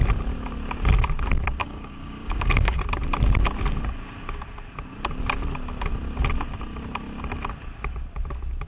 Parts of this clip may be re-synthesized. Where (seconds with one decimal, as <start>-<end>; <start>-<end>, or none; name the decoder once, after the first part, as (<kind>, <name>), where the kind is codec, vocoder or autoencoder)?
1.6-2.8 (codec, DAC)